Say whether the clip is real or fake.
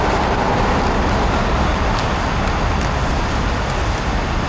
real